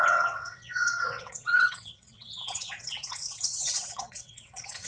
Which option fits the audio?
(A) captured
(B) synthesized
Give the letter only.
B